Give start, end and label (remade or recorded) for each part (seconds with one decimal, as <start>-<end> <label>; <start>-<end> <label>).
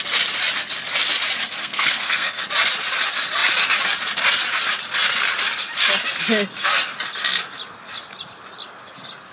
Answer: 0.0-1.6 recorded; 1.6-2.4 remade; 2.4-9.3 recorded